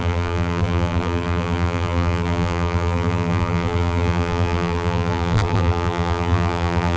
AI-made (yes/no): yes